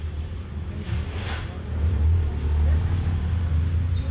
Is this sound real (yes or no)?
yes